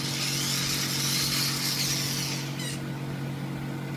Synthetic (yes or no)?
no